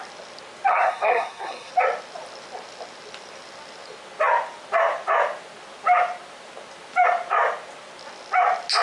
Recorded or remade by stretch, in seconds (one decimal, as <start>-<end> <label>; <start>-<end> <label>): 0.0-0.7 recorded; 0.7-1.7 remade; 1.7-8.8 recorded